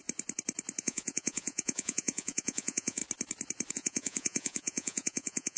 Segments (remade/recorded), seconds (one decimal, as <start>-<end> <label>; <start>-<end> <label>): 0.0-0.8 recorded; 0.8-3.0 remade; 3.0-3.7 recorded; 3.7-5.6 remade